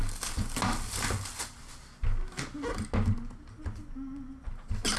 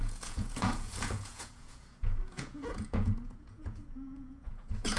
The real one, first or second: first